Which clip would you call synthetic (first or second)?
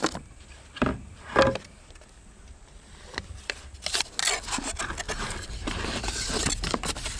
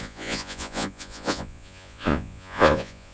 second